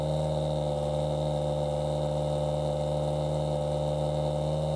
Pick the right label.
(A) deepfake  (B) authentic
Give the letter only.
B